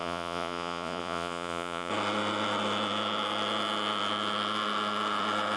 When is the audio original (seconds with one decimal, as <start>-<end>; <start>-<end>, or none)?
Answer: 1.9-5.6